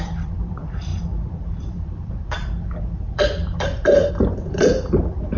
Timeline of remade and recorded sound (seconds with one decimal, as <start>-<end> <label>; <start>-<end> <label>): 0.0-5.4 remade